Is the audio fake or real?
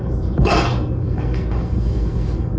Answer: fake